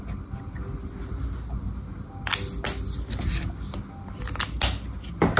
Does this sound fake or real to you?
real